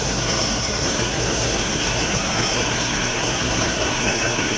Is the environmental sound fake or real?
fake